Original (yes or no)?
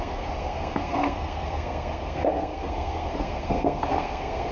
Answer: no